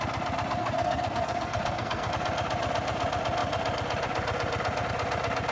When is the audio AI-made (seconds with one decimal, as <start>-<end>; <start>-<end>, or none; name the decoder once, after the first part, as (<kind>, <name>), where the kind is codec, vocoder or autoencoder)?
0.6-2.1 (codec, SNAC)